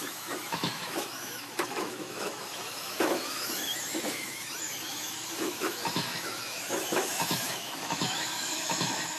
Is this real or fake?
fake